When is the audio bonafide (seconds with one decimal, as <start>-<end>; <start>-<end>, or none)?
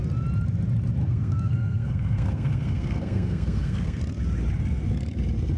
0.0-1.0; 4.0-5.6